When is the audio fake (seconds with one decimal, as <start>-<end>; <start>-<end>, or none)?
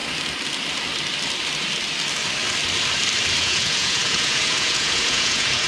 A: 3.4-5.7